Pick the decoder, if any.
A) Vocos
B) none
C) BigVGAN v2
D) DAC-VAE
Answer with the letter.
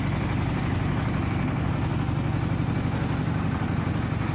B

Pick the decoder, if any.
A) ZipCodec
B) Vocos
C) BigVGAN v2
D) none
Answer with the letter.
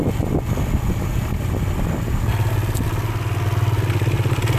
D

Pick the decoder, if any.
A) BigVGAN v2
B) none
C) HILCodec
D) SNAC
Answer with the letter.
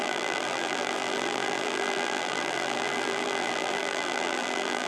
A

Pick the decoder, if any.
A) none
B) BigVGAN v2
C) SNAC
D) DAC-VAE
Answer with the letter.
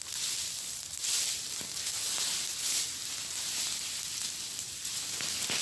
A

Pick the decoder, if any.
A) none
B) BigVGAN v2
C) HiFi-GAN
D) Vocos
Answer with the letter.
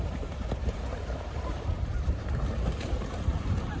B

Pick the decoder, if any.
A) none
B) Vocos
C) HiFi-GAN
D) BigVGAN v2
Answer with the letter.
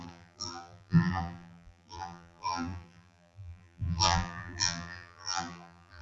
D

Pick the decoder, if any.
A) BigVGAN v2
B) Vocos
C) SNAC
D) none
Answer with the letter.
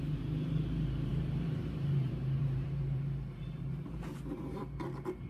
A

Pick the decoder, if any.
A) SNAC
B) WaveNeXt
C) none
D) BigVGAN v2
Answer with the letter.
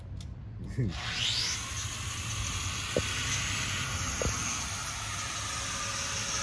C